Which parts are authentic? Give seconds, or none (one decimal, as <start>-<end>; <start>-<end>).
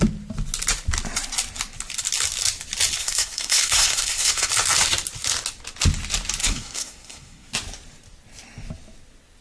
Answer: 0.0-3.0; 4.5-6.4; 7.5-9.4